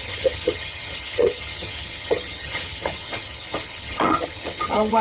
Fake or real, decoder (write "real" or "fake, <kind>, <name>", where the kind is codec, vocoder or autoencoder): fake, vocoder, HiFi-GAN